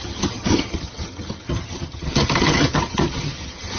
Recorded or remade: remade